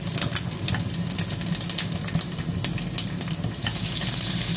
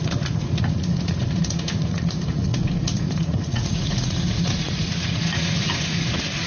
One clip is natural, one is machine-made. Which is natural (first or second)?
first